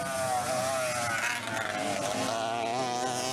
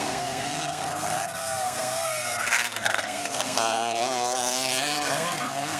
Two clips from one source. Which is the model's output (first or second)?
second